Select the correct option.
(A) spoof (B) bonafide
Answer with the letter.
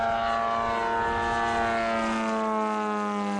B